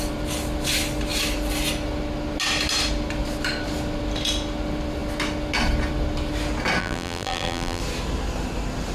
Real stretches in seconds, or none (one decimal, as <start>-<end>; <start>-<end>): 0.0-6.8; 7.8-8.9

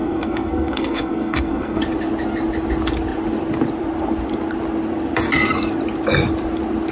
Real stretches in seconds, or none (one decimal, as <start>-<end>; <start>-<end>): 1.8-6.9